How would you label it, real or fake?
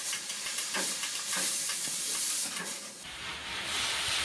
fake